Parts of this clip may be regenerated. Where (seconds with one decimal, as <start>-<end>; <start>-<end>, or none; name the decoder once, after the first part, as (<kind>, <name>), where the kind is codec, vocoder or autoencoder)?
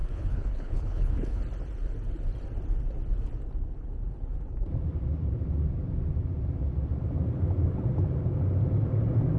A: 0.0-1.4 (codec, HILCodec)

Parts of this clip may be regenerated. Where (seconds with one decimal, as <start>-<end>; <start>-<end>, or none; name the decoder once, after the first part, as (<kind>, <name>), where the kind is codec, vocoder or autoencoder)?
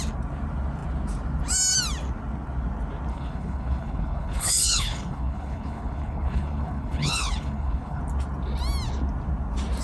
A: 3.1-8.0 (codec, HILCodec)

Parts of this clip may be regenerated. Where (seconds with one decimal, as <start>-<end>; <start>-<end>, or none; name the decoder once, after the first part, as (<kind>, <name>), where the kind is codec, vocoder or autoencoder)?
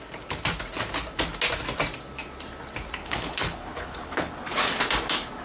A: 3.0-4.3 (codec, HILCodec)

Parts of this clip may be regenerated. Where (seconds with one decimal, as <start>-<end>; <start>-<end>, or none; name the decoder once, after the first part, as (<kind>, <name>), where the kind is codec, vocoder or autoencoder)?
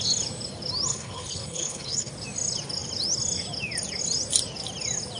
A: 0.9-2.1 (codec, HILCodec)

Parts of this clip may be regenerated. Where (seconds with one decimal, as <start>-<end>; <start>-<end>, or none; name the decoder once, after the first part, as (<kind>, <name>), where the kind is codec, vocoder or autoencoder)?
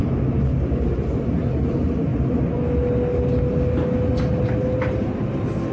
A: none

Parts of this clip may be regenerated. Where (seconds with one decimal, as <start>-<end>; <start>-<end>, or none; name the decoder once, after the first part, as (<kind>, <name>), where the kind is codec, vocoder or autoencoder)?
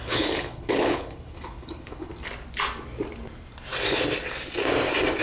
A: 0.0-2.1 (codec, HILCodec)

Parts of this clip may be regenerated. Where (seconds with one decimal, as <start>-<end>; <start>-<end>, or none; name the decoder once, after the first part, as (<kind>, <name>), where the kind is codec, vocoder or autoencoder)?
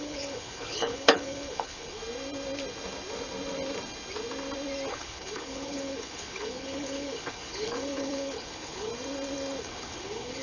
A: 0.0-2.0 (codec, HILCodec); 4.9-8.9; 9.6-10.4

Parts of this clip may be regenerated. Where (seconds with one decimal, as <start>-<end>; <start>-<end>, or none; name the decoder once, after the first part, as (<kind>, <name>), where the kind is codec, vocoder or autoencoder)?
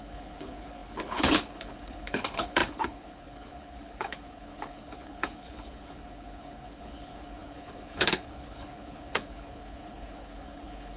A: 0.0-11.0 (codec, HILCodec)